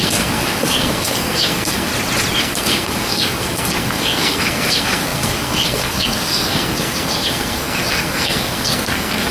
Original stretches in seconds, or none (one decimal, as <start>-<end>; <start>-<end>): 1.9-2.4